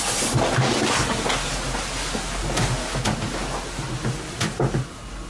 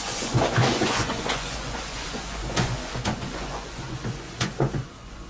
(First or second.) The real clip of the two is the first